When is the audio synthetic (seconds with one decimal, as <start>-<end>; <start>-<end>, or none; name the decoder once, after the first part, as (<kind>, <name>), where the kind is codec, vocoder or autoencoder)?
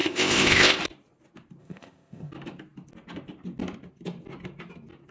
0.0-0.8 (codec, ZipCodec); 1.6-2.3